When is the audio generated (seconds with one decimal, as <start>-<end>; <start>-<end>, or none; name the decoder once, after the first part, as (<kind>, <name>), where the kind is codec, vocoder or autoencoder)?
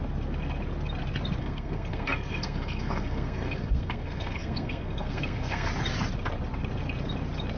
1.4-5.7 (codec, SNAC)